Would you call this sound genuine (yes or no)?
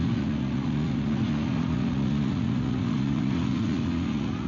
no